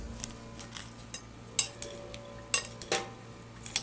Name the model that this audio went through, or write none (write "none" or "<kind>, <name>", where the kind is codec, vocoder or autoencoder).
none